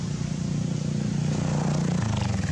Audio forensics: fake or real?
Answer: real